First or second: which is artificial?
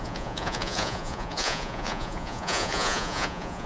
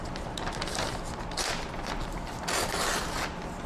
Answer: first